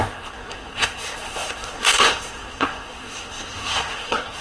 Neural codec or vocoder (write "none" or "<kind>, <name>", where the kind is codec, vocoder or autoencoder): codec, SNAC